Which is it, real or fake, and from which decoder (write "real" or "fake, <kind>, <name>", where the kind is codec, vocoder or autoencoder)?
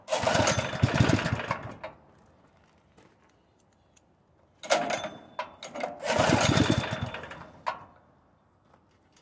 real